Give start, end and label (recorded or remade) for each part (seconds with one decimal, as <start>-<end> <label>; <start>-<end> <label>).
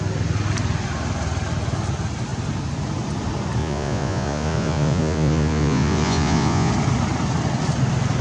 0.0-3.6 recorded; 3.6-6.7 remade; 6.7-8.2 recorded